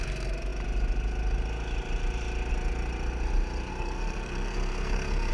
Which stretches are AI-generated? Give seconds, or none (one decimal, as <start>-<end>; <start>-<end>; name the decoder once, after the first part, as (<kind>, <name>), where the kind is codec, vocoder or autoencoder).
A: 3.7-5.3 (codec, SNAC)